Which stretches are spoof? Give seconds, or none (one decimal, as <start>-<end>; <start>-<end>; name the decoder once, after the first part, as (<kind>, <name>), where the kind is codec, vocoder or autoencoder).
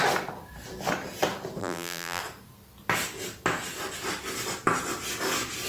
1.6-2.2 (vocoder, BigVGAN v2)